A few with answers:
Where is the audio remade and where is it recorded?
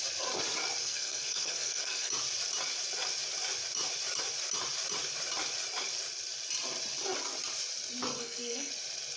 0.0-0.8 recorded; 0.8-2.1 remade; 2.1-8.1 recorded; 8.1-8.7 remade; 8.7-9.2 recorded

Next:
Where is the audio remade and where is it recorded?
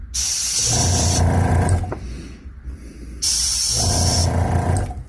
0.0-0.9 recorded; 0.9-4.2 remade; 4.2-5.1 recorded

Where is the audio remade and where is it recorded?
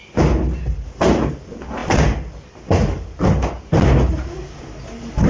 0.0-5.3 recorded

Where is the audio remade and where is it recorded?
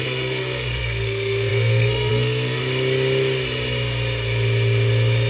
0.0-2.6 remade; 2.6-5.3 recorded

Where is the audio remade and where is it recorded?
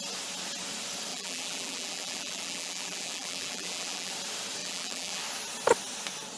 0.0-1.1 recorded; 1.1-4.1 remade; 4.1-4.6 recorded; 4.6-5.2 remade; 5.2-6.4 recorded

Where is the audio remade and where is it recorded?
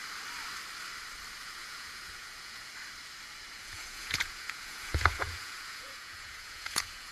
0.0-1.4 recorded; 1.4-2.7 remade; 2.7-3.6 recorded; 3.6-7.1 remade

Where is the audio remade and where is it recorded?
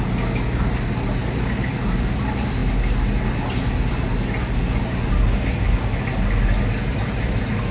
0.0-7.7 recorded